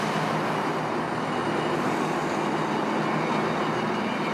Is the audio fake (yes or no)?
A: no